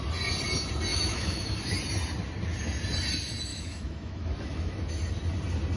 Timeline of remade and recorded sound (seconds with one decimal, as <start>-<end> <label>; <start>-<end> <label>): 0.0-0.9 recorded; 0.9-1.5 remade; 1.5-3.5 recorded; 3.5-4.9 remade; 4.9-5.8 recorded